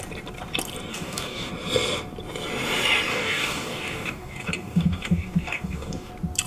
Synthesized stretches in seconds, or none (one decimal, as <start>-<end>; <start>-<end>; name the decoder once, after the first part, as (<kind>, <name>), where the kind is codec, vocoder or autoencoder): 0.9-1.5 (codec, DAC); 3.1-6.1